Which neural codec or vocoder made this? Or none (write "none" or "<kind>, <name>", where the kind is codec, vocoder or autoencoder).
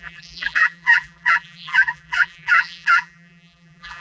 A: vocoder, BigVGAN v2